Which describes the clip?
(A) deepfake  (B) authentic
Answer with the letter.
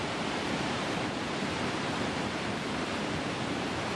B